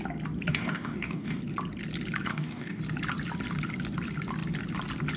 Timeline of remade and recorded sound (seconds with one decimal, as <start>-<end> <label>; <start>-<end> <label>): 0.0-0.5 recorded; 0.5-1.4 remade; 1.4-2.3 recorded; 2.3-2.8 remade; 2.8-5.2 recorded